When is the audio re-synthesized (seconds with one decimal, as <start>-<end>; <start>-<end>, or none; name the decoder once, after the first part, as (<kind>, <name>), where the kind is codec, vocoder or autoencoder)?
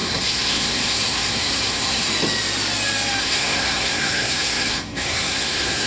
0.0-2.1 (codec, SNAC); 3.2-5.9